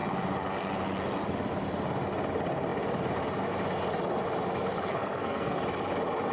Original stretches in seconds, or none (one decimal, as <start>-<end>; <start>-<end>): 0.0-4.9; 5.6-6.3